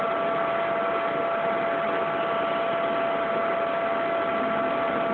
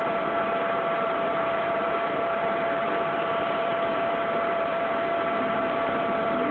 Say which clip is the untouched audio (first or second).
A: first